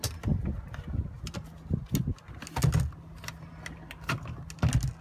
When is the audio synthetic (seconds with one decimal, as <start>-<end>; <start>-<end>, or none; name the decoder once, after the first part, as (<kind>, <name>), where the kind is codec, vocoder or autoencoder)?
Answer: none